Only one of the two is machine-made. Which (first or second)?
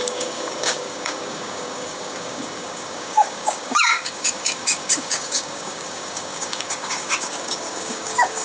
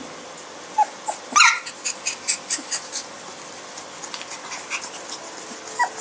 first